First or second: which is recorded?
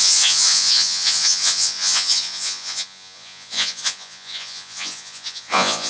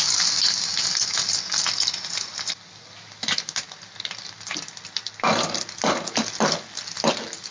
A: second